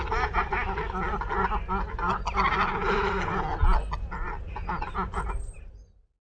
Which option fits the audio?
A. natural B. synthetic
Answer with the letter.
A